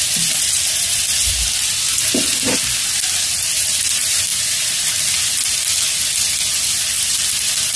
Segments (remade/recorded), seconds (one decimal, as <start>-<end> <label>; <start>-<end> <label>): 0.0-4.3 recorded; 4.3-4.9 remade; 4.9-7.8 recorded